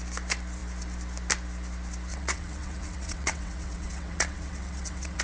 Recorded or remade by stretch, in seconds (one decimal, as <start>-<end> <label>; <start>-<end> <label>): 0.0-2.1 recorded; 2.1-5.2 remade